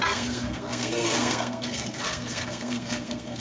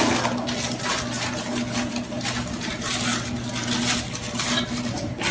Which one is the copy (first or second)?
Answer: first